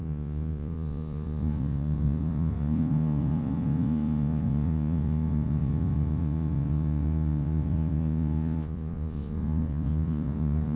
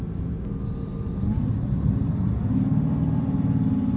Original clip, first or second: second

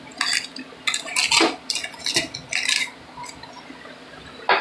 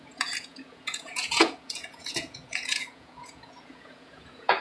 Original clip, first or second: first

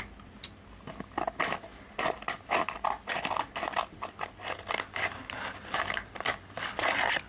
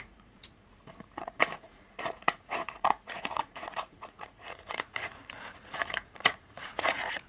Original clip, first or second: first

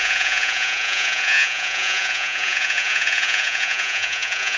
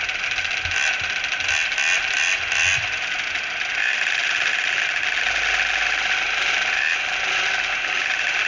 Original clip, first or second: second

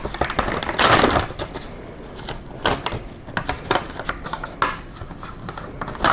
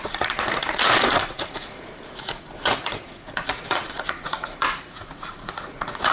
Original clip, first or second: first